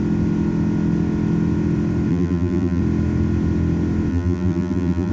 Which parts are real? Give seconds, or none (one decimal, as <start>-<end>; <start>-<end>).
0.0-2.1; 2.8-4.1